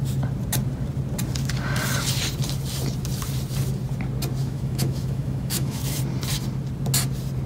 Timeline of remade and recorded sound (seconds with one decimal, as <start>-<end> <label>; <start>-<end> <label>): 0.0-4.4 recorded; 4.4-6.0 remade; 6.0-7.5 recorded